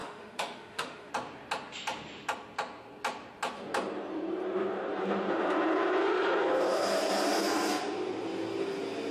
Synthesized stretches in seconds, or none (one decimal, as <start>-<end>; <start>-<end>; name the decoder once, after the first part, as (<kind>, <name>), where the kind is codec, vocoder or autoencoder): 0.0-1.1 (autoencoder, DAC-VAE)